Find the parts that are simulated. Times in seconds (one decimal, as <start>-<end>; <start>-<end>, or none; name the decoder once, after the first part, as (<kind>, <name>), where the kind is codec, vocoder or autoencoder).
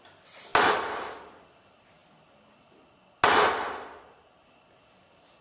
none